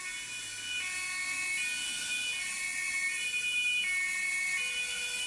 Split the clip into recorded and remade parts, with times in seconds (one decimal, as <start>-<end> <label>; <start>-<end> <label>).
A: 0.0-5.3 recorded